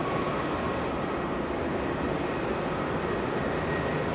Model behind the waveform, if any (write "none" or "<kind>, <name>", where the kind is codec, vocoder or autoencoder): none